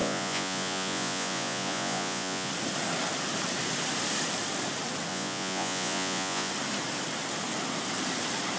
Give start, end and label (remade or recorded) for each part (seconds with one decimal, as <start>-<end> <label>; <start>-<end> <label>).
0.0-2.5 remade; 2.5-5.1 recorded; 5.1-6.5 remade; 6.5-8.6 recorded